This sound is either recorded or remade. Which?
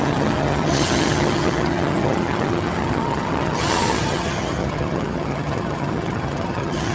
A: remade